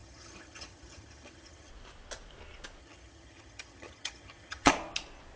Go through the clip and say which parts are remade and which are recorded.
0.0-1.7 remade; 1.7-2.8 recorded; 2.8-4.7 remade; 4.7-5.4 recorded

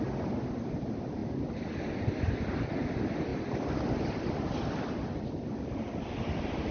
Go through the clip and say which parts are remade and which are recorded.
0.0-1.2 recorded; 1.2-2.2 remade; 2.2-3.3 recorded; 3.3-4.9 remade; 4.9-6.7 recorded

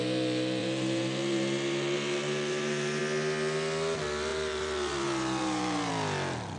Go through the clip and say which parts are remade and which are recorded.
0.0-0.6 recorded; 0.6-3.0 remade; 3.0-4.3 recorded; 4.3-5.9 remade; 5.9-6.6 recorded

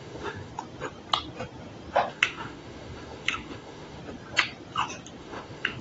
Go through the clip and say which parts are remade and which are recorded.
0.0-0.5 remade; 0.5-2.1 recorded; 2.1-4.0 remade; 4.0-5.2 recorded; 5.2-5.8 remade

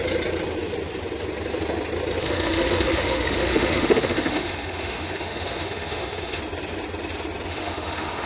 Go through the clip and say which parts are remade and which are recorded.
0.0-2.2 recorded; 2.2-6.4 remade; 6.4-7.5 recorded; 7.5-8.3 remade

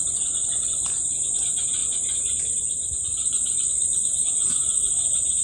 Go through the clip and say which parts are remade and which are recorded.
0.0-3.3 recorded; 3.3-4.9 remade; 4.9-5.4 recorded